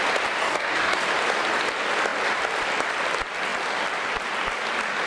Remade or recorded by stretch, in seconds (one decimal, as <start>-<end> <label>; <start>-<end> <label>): 0.0-0.4 recorded; 0.4-1.0 remade; 1.0-5.1 recorded